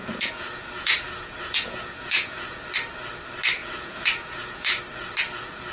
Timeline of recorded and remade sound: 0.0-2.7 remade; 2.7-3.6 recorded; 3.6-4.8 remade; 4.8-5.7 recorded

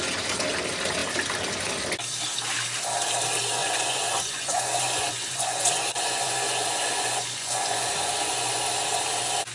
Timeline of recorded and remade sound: 0.0-3.6 recorded; 3.6-8.6 remade; 8.6-9.5 recorded

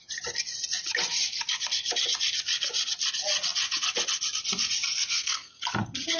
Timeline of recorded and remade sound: 0.0-5.1 recorded; 5.1-5.6 remade; 5.6-6.2 recorded

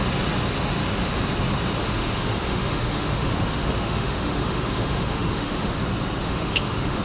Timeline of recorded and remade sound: 0.0-1.8 recorded; 1.8-5.8 remade; 5.8-6.2 recorded; 6.2-7.0 remade

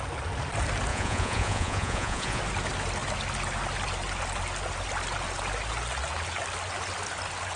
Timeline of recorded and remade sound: 0.0-0.9 recorded; 0.9-2.4 remade; 2.4-7.6 recorded

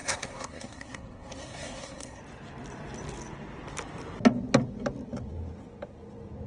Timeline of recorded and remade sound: 0.0-2.2 remade; 2.2-6.5 recorded

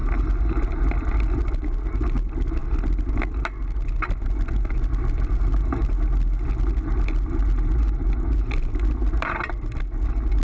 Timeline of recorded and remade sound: 0.0-10.4 recorded

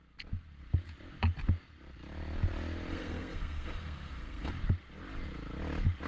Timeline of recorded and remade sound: 0.0-2.9 recorded; 2.9-4.5 remade; 4.5-6.1 recorded